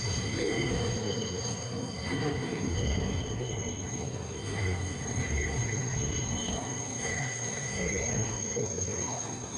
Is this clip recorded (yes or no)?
no